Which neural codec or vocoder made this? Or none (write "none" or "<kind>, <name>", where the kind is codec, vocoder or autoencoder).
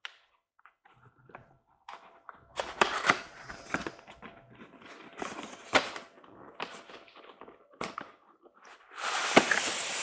vocoder, BigVGAN v2